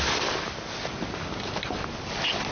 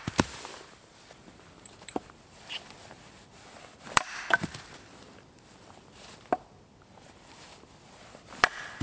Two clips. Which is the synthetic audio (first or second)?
second